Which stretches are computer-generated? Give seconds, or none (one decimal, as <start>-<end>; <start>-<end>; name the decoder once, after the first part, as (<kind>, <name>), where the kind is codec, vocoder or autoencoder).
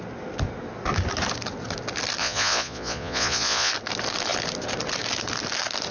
2.2-3.7 (vocoder, Vocos)